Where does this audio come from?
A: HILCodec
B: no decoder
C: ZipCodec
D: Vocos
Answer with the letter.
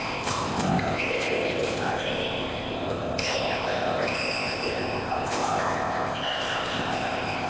C